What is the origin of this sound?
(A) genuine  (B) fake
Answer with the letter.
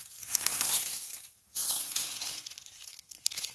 B